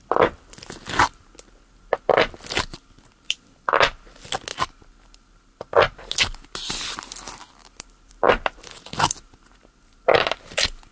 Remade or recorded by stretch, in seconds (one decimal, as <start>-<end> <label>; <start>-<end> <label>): 0.0-10.9 recorded